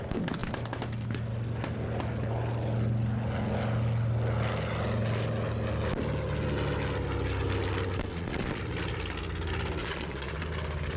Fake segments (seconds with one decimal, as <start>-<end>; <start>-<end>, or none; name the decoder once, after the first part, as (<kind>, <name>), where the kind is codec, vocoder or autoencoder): 8.1-8.6 (vocoder, Vocos); 9.8-10.4

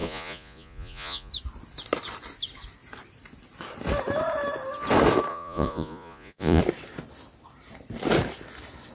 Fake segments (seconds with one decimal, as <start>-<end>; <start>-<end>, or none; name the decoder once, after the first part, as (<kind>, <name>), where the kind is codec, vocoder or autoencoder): 0.0-1.3 (vocoder, Vocos); 5.3-6.6